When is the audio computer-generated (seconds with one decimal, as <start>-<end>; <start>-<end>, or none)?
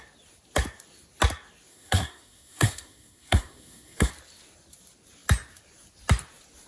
1.7-4.1